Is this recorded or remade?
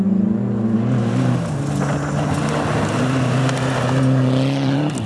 recorded